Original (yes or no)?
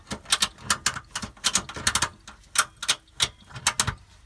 yes